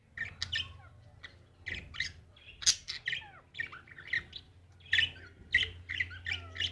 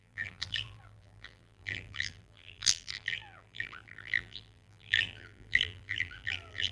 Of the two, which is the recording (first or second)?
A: first